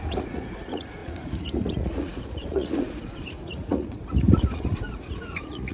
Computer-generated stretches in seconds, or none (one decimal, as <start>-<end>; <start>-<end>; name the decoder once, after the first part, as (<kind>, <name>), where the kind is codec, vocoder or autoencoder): 0.0-5.7 (vocoder, Vocos)